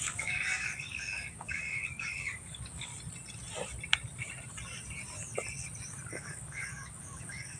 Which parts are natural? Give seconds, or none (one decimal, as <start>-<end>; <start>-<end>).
2.9-6.1